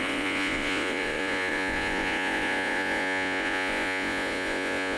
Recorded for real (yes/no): no